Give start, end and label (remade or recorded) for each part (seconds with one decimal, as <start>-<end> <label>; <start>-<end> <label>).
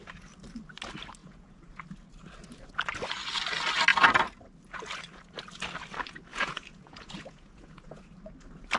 0.0-1.2 recorded; 1.2-1.8 remade; 1.8-6.3 recorded; 6.3-8.1 remade; 8.1-8.8 recorded